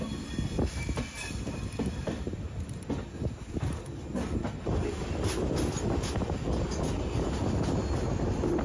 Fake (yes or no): no